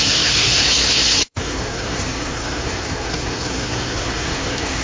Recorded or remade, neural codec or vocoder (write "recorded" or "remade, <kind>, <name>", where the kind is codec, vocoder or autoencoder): remade, codec, SNAC